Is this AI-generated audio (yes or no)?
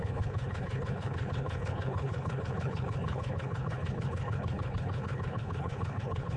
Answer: yes